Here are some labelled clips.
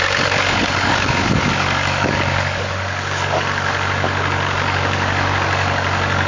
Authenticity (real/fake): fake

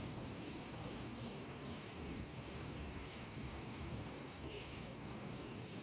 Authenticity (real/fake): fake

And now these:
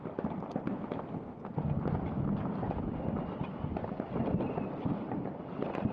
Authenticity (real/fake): real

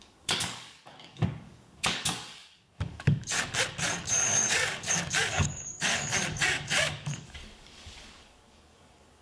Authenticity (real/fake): fake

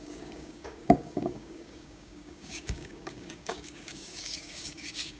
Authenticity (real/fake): fake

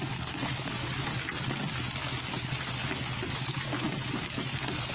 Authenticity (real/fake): real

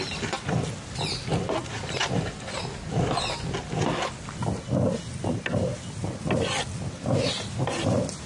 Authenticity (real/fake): real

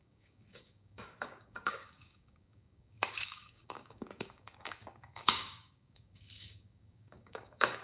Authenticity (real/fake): fake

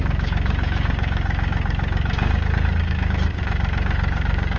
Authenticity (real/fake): fake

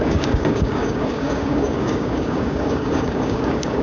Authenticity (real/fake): fake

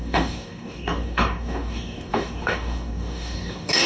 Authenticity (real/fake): fake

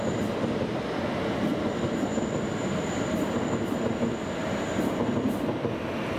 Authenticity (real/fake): real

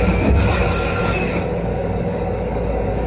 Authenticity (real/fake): fake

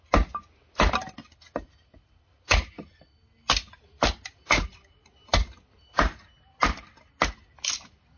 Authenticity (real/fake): real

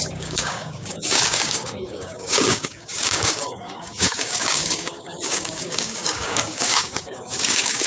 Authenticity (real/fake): fake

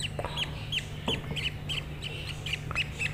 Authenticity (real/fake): real